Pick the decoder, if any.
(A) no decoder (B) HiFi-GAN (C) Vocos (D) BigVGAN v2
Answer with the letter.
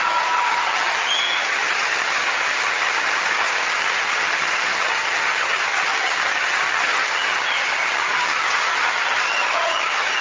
B